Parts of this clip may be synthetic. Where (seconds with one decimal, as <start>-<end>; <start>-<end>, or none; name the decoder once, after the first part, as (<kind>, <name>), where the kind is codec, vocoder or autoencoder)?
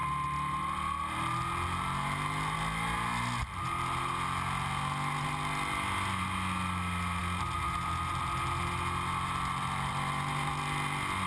none